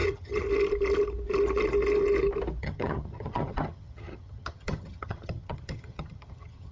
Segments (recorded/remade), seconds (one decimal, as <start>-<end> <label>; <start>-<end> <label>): 0.0-0.5 remade; 0.5-2.6 recorded; 2.6-6.7 remade